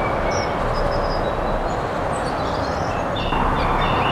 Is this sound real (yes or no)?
yes